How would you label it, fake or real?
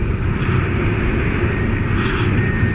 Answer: real